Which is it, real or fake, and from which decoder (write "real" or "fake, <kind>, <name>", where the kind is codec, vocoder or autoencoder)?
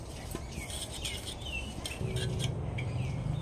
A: real